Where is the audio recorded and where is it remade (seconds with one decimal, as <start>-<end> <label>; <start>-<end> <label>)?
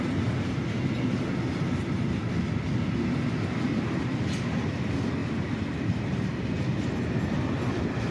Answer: 0.0-5.2 recorded; 5.2-6.8 remade; 6.8-8.1 recorded